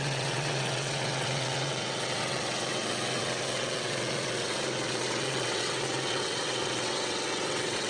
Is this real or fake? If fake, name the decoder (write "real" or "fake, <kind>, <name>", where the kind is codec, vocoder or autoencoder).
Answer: fake, vocoder, WaveNeXt